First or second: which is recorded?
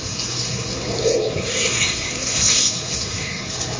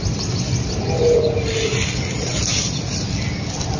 second